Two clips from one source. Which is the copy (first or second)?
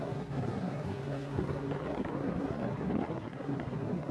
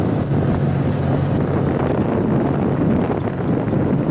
first